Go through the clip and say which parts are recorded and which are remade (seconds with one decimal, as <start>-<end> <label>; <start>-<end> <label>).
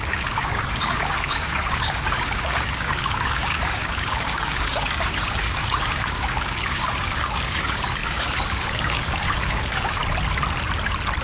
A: 0.0-10.0 remade; 10.0-11.2 recorded